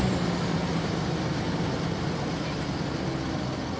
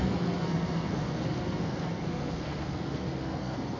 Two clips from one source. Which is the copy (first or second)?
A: second